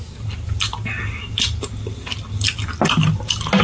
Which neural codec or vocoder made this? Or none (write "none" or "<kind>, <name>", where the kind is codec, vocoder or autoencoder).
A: none